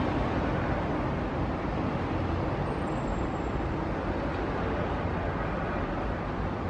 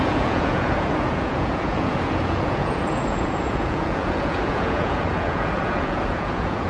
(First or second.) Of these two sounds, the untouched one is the first